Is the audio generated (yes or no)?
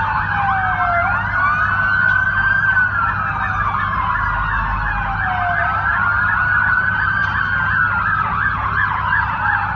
no